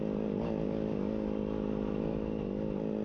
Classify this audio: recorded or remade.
recorded